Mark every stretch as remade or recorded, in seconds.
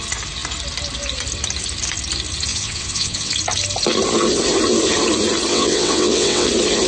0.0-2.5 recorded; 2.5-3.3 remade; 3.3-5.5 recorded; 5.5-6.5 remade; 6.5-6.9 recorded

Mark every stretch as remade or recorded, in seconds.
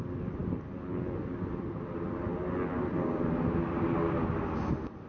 0.0-5.1 recorded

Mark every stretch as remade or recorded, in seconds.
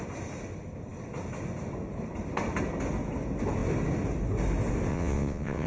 0.0-4.9 recorded; 4.9-5.7 remade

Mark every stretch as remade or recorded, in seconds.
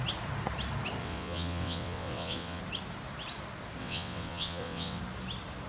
0.0-1.0 recorded; 1.0-2.6 remade; 2.6-3.8 recorded; 3.8-5.0 remade; 5.0-5.7 recorded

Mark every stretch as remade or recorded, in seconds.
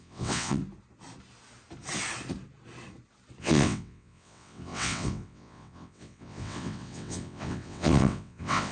0.0-0.6 remade; 0.6-3.4 recorded; 3.4-8.7 remade